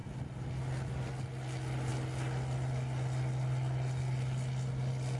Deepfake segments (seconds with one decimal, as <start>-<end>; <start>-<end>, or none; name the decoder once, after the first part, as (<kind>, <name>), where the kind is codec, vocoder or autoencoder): none